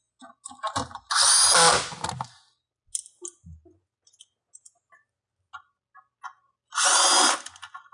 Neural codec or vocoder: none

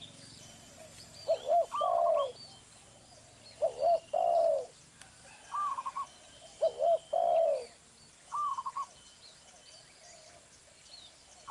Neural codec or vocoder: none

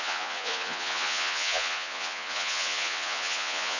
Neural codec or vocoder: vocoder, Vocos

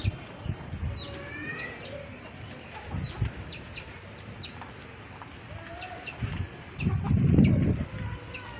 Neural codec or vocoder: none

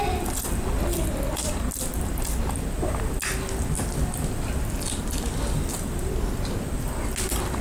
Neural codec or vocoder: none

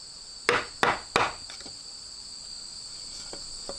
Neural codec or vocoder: none